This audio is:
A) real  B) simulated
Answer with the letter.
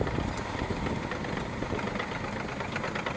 A